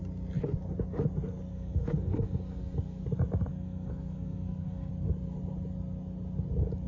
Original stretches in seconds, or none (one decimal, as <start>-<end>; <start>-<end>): 0.0-1.5; 3.0-3.5; 4.9-6.9